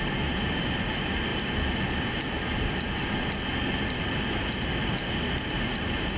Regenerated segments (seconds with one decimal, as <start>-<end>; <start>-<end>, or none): none